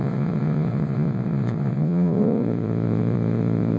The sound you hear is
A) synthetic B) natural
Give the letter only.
A